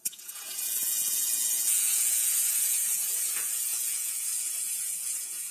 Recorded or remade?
remade